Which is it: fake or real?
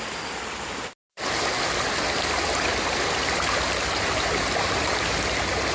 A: real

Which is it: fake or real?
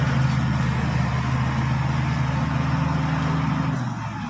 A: real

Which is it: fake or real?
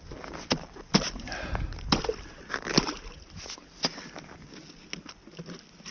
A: real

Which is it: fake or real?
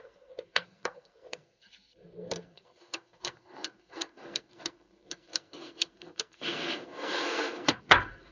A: fake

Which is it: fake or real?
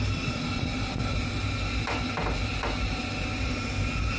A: real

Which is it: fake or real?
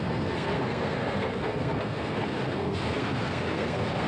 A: fake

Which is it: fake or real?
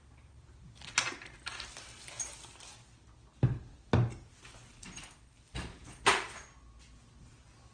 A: real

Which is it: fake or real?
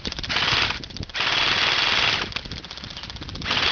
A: real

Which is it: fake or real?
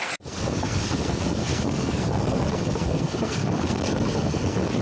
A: fake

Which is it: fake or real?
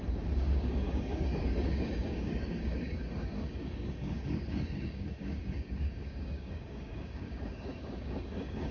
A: fake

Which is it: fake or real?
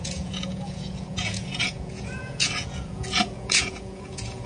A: fake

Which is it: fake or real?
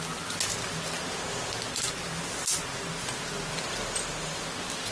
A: real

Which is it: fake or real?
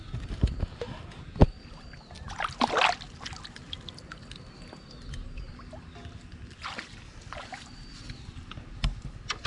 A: real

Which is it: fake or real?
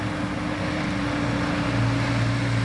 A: real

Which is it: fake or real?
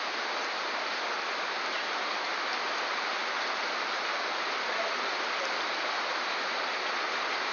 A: real